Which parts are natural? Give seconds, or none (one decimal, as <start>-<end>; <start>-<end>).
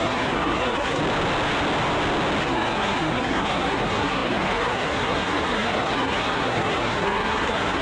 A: 1.0-2.4